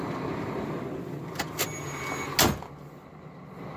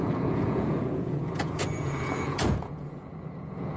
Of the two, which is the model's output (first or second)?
second